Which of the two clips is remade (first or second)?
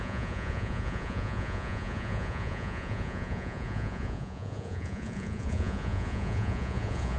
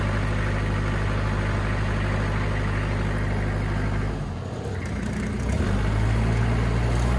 first